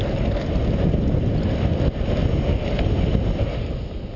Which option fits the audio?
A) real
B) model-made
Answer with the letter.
A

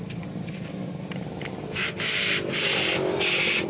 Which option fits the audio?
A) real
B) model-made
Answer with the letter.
A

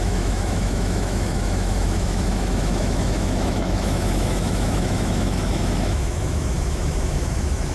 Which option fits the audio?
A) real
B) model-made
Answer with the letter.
B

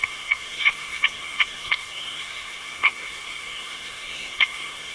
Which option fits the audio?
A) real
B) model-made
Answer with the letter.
B